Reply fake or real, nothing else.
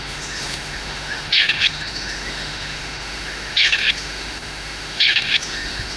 fake